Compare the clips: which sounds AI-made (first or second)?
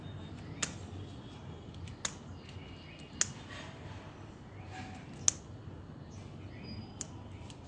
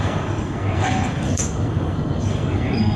second